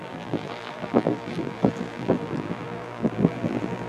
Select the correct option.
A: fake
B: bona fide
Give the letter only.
A